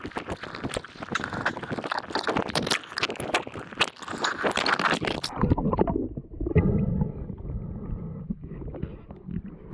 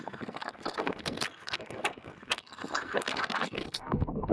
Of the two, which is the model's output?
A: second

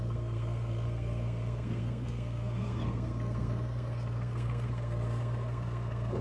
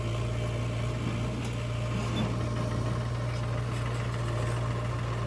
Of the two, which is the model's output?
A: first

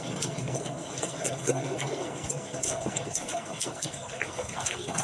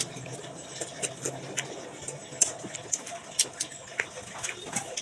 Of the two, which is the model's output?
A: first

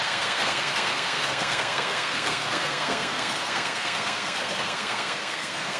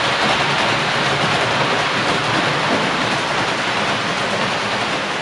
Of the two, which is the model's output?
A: first